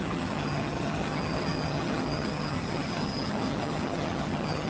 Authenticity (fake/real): fake